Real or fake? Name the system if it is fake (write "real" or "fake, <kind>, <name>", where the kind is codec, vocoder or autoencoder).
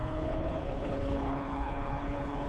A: fake, codec, HILCodec